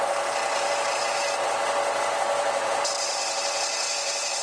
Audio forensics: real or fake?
fake